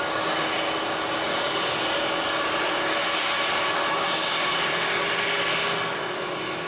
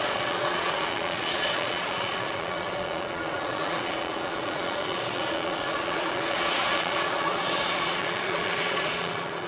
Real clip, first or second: first